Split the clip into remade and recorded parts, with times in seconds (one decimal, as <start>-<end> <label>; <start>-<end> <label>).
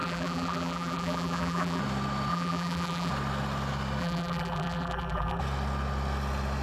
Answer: 0.0-1.8 remade; 1.8-2.3 recorded; 2.3-3.1 remade; 3.1-4.0 recorded; 4.0-5.4 remade; 5.4-6.6 recorded